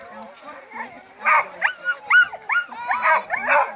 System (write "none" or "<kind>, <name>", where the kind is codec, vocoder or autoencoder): none